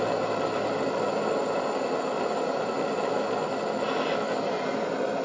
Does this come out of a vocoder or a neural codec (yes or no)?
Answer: no